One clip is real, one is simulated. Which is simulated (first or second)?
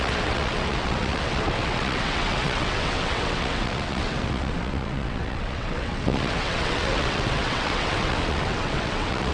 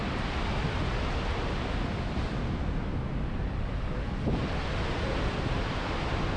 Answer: first